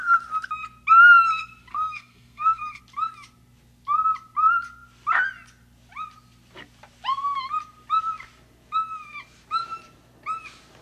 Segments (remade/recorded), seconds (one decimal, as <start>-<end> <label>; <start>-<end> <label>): 0.0-1.7 recorded; 1.7-2.8 remade; 2.8-10.8 recorded